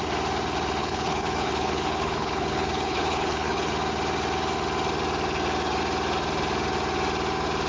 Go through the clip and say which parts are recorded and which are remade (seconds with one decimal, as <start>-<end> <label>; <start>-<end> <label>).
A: 0.0-0.8 recorded; 0.8-3.7 remade; 3.7-7.7 recorded